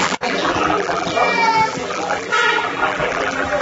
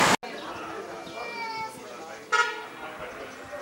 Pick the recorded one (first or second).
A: second